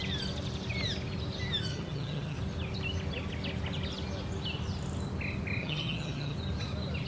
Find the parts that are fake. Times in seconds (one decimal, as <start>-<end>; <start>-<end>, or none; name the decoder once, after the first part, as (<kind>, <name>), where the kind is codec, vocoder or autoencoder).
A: 1.7-2.4 (vocoder, HiFi-GAN); 5.6-6.4